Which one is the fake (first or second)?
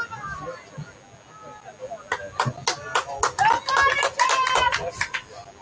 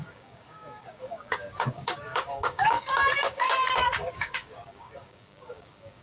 second